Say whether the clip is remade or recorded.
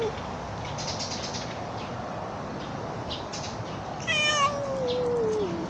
recorded